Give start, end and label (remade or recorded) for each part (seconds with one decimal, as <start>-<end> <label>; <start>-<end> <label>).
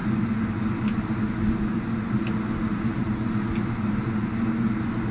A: 0.0-5.1 recorded